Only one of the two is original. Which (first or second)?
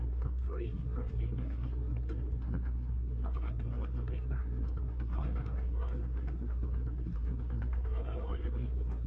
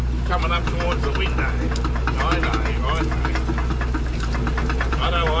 second